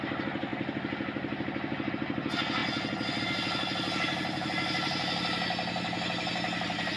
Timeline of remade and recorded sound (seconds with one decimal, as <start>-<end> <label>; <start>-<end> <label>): 0.0-7.0 recorded

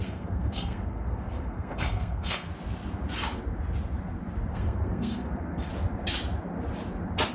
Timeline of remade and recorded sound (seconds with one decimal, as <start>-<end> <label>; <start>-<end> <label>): 0.0-2.5 remade; 2.5-4.5 recorded; 4.5-5.7 remade; 5.7-7.3 recorded

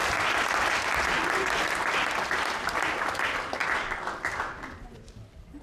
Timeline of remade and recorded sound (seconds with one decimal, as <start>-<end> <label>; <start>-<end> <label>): 0.0-5.6 recorded

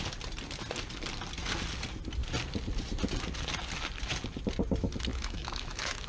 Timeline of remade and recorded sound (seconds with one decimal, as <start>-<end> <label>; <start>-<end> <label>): 0.0-5.1 recorded; 5.1-6.1 remade

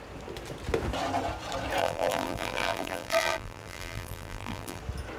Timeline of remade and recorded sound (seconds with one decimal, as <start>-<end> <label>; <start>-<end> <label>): 0.0-1.8 recorded; 1.8-4.8 remade; 4.8-5.2 recorded

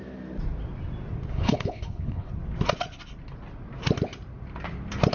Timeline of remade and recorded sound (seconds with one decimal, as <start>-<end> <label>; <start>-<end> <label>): 0.0-1.3 recorded; 1.3-2.3 remade; 2.3-5.1 recorded